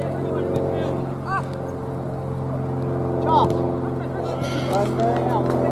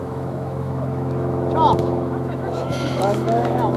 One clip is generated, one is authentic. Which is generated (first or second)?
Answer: second